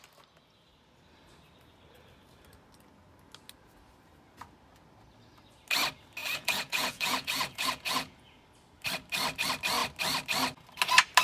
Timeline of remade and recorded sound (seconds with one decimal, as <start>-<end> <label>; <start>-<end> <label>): 0.0-6.2 recorded; 6.2-8.4 remade; 8.4-11.2 recorded